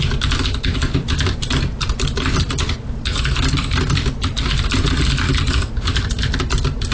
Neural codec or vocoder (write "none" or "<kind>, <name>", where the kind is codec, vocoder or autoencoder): none